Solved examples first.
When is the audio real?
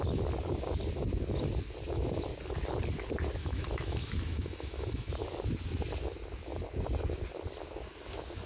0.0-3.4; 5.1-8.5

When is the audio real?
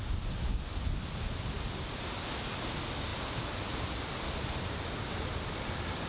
0.0-3.1; 4.6-6.1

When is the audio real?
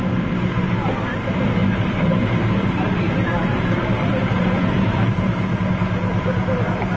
0.0-1.6; 5.7-7.0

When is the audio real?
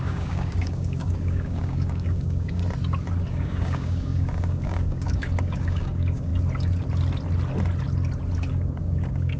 2.6-3.3; 6.3-8.5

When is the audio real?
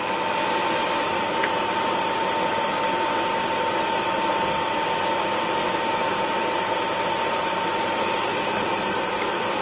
0.0-9.6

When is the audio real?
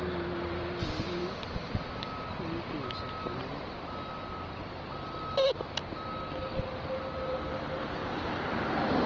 0.0-9.1